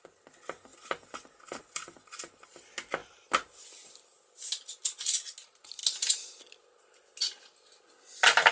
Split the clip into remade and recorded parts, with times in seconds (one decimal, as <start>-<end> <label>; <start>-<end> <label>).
0.0-8.5 recorded